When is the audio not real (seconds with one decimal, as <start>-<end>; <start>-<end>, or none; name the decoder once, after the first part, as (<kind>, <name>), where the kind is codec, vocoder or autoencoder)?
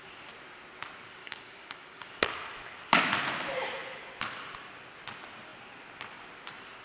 1.2-2.1 (codec, DAC)